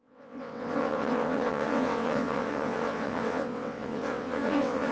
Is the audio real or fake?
fake